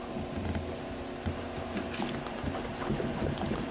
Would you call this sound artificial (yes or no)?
no